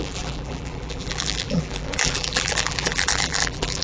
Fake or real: fake